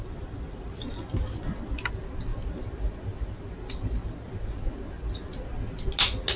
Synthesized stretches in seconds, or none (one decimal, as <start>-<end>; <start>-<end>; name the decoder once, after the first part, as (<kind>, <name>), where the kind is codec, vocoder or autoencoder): 0.0-1.9 (vocoder, BigVGAN v2)